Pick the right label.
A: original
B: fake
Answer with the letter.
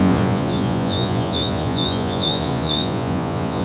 B